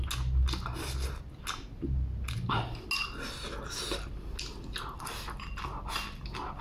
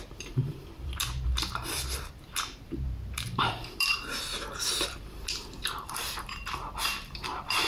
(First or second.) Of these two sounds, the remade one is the second